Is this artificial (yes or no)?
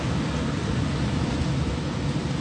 no